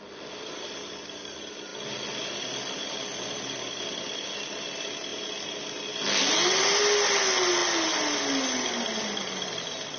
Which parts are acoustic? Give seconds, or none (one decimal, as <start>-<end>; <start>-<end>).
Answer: 0.0-10.0